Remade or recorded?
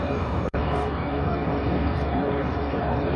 remade